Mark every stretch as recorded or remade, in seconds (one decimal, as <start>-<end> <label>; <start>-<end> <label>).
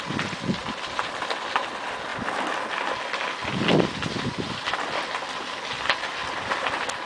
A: 0.0-0.6 recorded; 0.6-1.6 remade; 1.6-3.4 recorded; 3.4-5.1 remade; 5.1-6.2 recorded; 6.2-7.1 remade